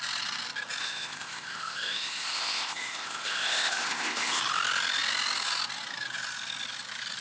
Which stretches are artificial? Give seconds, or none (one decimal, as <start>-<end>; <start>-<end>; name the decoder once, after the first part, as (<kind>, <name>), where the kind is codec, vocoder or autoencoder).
0.8-4.4 (codec, ZipCodec)